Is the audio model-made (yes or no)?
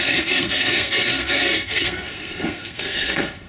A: yes